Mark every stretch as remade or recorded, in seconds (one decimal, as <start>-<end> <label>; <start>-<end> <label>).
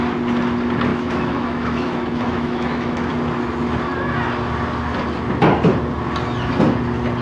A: 0.0-0.9 recorded; 0.9-3.1 remade; 3.1-7.2 recorded